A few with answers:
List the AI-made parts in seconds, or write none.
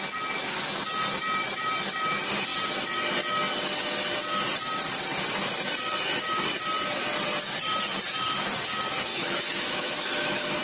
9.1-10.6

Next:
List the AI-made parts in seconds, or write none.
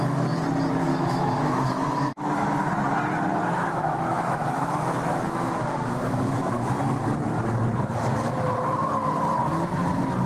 0.9-2.7; 3.3-6.4